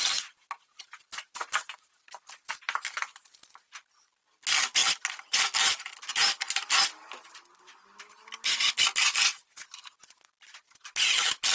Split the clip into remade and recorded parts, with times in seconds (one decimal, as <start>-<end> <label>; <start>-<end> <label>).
0.0-11.5 recorded